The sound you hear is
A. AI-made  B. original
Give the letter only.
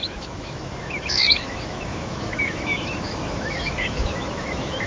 A